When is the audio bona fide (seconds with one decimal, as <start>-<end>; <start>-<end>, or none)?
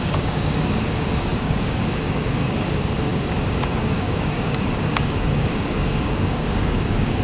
none